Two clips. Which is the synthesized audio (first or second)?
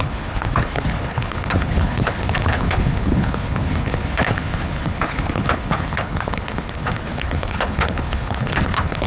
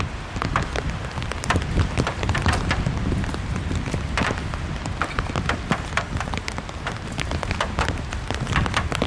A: first